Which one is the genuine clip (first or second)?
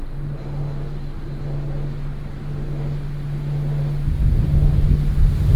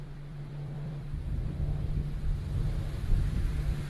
first